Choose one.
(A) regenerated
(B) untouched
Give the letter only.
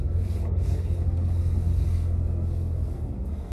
A